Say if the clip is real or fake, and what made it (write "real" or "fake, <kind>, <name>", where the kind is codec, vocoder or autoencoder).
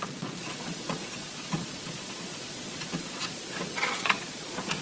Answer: fake, vocoder, Vocos